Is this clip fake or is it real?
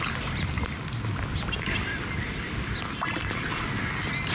real